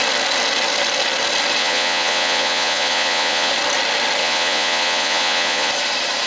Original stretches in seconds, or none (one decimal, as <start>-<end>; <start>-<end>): 0.0-1.6; 3.5-4.2; 5.7-6.3